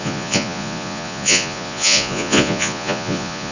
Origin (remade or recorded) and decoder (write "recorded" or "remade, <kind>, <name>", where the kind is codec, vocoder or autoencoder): remade, vocoder, Vocos